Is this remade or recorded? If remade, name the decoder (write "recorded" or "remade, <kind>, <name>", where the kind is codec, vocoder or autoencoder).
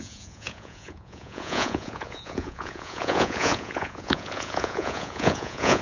remade, vocoder, Vocos